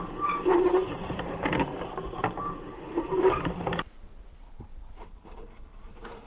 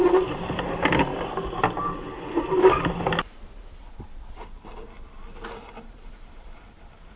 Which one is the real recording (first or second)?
second